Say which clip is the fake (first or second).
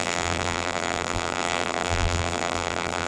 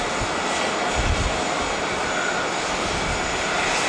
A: first